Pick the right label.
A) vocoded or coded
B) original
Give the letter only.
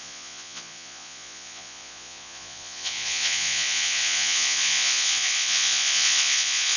A